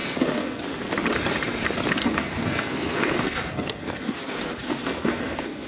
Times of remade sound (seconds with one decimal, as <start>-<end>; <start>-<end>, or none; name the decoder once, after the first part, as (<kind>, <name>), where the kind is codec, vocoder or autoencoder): 0.0-0.6 (codec, SNAC); 2.0-5.7